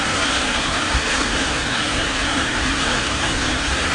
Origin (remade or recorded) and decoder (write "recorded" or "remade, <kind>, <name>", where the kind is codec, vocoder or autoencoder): remade, codec, SNAC